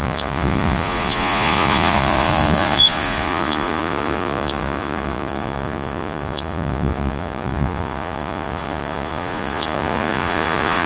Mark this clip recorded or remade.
remade